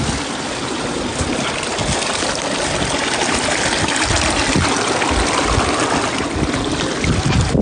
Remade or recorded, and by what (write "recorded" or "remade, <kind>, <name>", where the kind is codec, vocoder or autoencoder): recorded